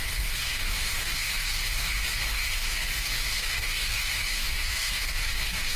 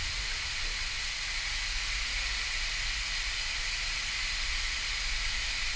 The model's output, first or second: first